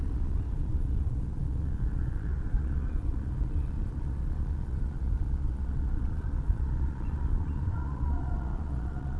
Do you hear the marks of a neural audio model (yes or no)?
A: yes